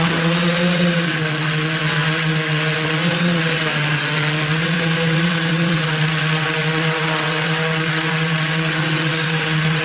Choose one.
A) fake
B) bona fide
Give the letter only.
A